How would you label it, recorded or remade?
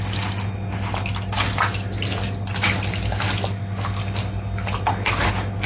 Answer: recorded